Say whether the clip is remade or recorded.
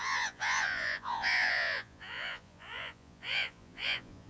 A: remade